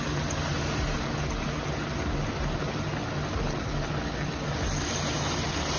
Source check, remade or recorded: recorded